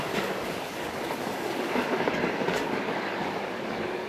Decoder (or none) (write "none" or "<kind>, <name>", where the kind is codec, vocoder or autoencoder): codec, DAC